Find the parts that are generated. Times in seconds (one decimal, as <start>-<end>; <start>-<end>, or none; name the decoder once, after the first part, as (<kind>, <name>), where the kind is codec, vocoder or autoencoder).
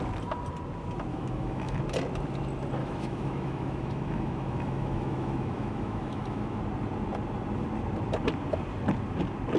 1.1-1.8 (autoencoder, DAC-VAE); 2.8-6.6